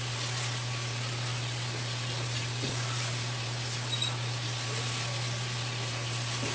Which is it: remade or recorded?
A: recorded